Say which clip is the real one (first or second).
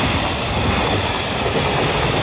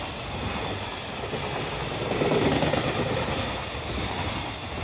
second